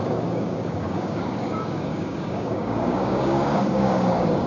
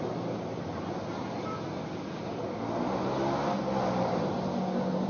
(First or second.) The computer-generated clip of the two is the first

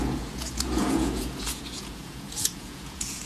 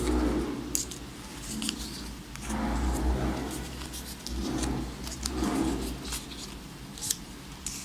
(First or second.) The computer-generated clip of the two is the first